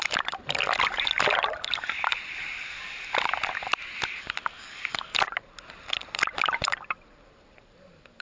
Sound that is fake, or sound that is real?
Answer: real